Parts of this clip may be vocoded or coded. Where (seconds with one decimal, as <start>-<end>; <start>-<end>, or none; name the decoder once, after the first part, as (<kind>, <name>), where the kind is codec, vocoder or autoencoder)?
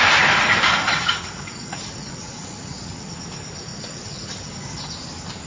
0.9-3.1 (vocoder, WaveNeXt); 3.7-4.9